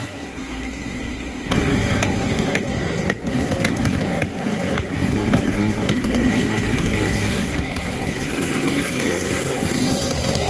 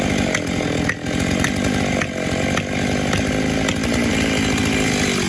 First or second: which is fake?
first